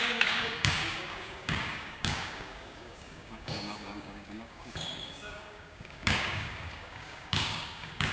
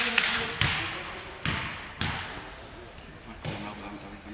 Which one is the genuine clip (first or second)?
second